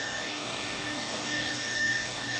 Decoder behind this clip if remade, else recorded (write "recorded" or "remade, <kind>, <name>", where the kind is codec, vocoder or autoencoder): remade, codec, DAC